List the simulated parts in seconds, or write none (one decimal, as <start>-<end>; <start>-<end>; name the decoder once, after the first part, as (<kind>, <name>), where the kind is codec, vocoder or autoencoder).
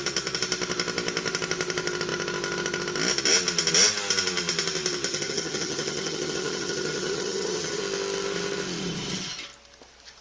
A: 5.1-7.8 (vocoder, HiFi-GAN)